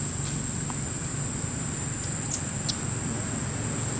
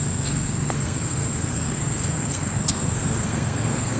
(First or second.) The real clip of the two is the first